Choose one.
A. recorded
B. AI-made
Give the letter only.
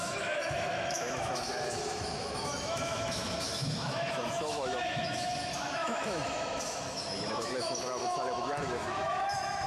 B